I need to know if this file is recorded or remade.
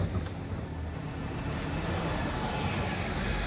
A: recorded